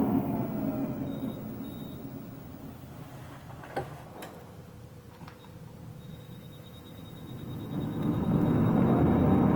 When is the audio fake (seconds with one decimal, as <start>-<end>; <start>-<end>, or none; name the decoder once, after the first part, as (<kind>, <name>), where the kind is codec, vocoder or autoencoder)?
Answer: 0.8-1.4 (autoencoder, DAC-VAE); 6.1-8.7